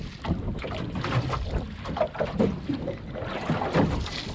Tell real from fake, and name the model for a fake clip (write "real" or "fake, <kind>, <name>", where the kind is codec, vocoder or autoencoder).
real